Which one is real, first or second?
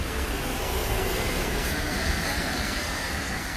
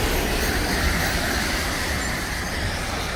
second